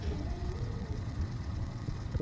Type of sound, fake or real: fake